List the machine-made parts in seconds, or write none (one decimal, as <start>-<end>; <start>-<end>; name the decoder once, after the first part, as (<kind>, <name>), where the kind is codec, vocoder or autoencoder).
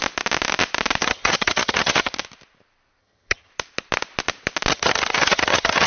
1.0-2.1 (vocoder, HiFi-GAN); 3.0-3.5; 4.7-5.9